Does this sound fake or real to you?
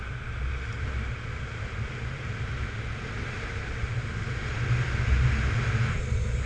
real